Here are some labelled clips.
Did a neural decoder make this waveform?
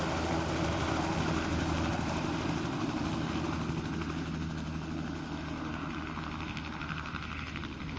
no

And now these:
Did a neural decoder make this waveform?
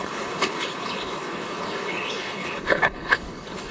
yes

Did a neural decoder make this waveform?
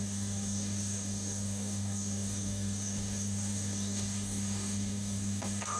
yes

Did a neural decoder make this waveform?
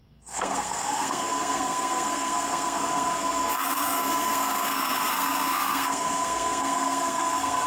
yes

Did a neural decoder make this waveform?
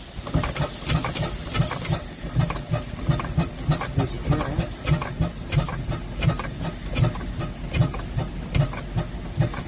no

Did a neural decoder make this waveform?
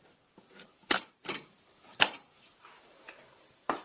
yes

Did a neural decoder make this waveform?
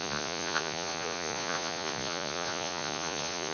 yes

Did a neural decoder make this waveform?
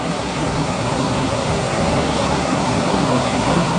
yes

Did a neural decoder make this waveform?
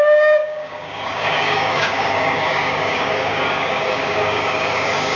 yes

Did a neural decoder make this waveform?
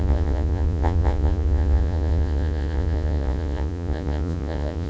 yes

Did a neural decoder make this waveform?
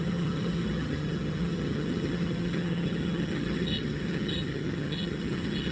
yes